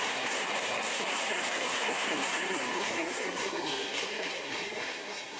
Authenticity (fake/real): fake